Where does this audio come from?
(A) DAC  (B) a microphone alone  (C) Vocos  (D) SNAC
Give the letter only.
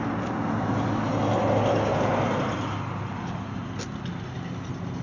B